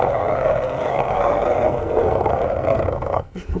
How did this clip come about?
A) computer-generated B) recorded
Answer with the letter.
A